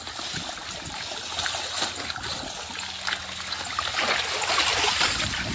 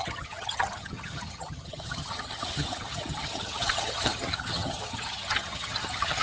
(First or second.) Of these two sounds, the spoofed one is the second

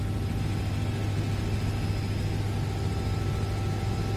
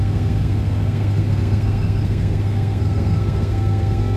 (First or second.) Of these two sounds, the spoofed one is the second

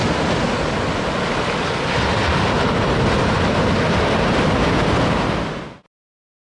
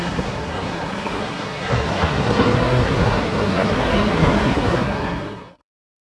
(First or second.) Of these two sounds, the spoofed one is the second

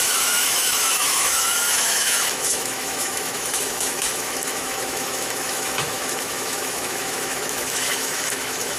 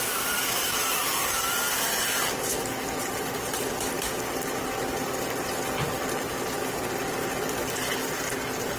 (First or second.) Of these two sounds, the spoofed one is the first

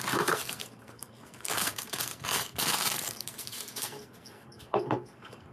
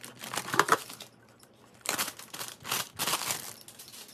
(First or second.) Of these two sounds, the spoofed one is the first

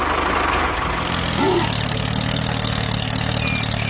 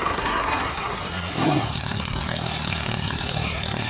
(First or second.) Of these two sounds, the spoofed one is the second